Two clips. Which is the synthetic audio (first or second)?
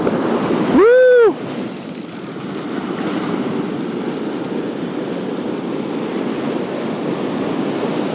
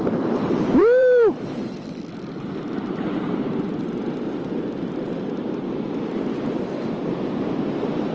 second